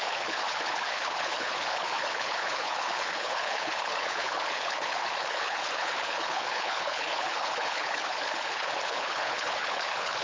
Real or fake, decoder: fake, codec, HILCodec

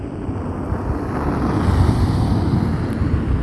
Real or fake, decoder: real